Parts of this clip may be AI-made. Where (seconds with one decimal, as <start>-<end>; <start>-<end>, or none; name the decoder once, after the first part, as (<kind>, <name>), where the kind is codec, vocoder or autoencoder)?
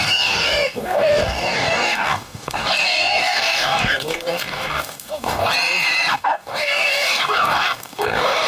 0.0-5.5 (codec, DAC); 6.1-8.5